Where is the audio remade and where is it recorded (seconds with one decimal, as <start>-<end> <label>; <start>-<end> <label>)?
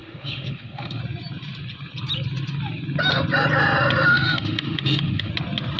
0.0-1.0 remade; 1.0-4.1 recorded; 4.1-5.3 remade; 5.3-5.8 recorded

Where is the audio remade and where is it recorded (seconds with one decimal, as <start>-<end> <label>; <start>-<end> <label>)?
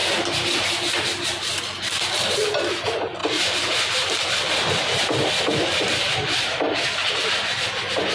0.0-0.6 recorded; 0.6-8.1 remade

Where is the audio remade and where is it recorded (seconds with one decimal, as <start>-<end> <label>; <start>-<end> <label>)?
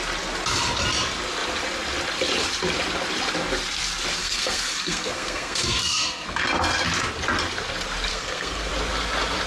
0.0-4.2 recorded; 4.2-6.4 remade; 6.4-8.1 recorded; 8.1-8.7 remade; 8.7-9.5 recorded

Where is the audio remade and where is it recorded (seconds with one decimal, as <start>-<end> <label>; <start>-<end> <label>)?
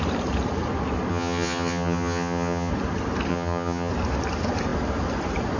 0.0-1.1 recorded; 1.1-2.7 remade; 2.7-3.3 recorded; 3.3-3.9 remade; 3.9-5.6 recorded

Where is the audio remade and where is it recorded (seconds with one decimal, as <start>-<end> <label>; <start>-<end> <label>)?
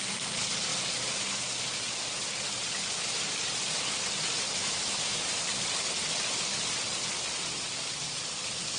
0.0-4.6 recorded; 4.6-5.2 remade; 5.2-8.8 recorded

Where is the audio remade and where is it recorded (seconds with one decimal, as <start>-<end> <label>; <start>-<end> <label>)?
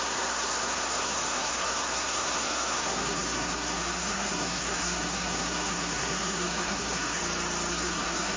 0.0-7.2 remade; 7.2-7.7 recorded; 7.7-8.4 remade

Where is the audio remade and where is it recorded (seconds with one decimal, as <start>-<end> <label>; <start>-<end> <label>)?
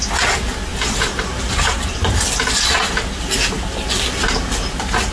0.0-5.1 recorded